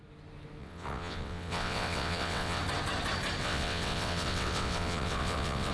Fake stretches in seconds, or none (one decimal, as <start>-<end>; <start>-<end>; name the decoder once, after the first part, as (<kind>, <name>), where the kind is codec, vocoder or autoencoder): 0.6-2.6 (vocoder, WaveNeXt); 3.4-5.7

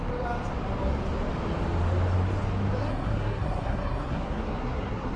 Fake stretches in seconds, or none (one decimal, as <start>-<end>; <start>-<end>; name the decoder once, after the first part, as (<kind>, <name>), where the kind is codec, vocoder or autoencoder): 2.8-5.2 (codec, SNAC)